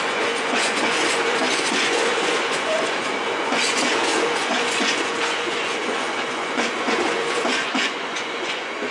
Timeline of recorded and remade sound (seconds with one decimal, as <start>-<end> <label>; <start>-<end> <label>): 0.0-8.9 remade